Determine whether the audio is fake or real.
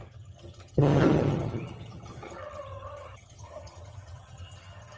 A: fake